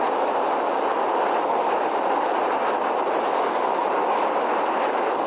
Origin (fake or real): real